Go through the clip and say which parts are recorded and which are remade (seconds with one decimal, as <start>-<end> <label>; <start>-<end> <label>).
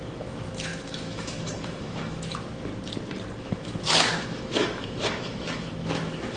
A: 0.0-2.7 remade; 2.7-3.4 recorded; 3.4-6.4 remade